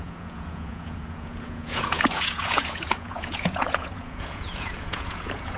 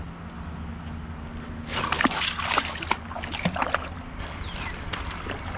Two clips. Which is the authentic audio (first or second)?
second